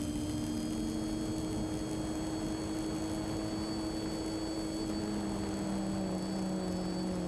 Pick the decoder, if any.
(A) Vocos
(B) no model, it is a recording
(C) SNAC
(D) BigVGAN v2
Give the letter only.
B